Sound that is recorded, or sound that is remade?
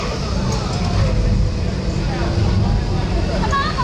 recorded